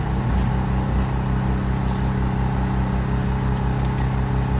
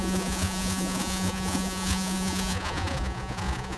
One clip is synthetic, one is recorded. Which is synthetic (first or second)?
second